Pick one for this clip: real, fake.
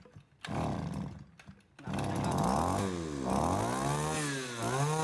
real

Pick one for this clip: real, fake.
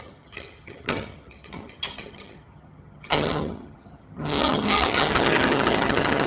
fake